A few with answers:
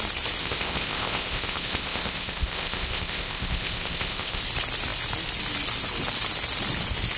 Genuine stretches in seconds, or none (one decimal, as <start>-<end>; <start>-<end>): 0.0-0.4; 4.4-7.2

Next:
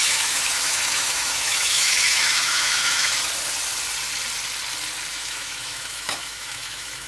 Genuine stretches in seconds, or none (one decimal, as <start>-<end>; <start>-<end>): 3.1-5.1

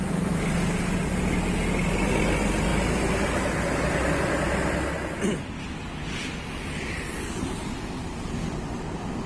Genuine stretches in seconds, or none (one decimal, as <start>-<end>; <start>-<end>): 0.0-7.6; 8.3-9.3

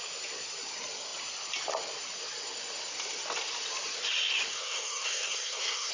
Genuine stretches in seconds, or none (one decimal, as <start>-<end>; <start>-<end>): 0.0-4.5

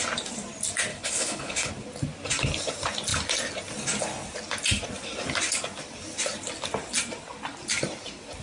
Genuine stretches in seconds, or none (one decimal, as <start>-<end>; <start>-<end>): 0.0-0.9; 1.7-8.4

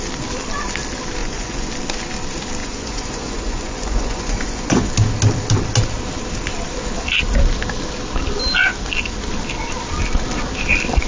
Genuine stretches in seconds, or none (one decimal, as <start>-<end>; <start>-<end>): 0.0-1.2; 1.7-2.6; 4.9-11.1

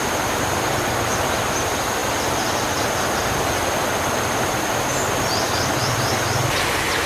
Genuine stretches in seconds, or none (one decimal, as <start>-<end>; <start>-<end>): 0.0-7.1

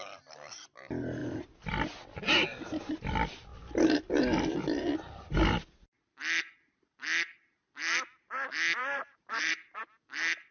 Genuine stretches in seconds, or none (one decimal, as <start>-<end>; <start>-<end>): 0.0-3.5; 4.1-8.8; 9.8-10.5